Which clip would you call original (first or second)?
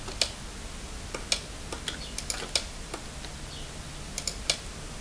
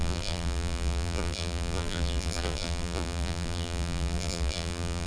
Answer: first